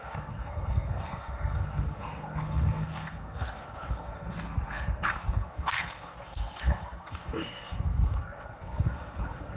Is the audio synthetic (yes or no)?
yes